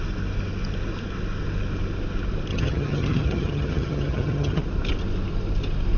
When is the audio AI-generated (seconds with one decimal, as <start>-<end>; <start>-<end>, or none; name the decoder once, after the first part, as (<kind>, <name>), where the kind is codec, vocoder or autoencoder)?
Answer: 2.5-4.6 (vocoder, HiFi-GAN)